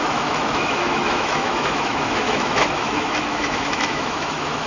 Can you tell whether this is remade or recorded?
remade